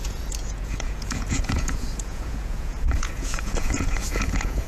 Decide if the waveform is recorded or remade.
remade